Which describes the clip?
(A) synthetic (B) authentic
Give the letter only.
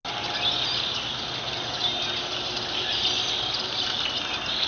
B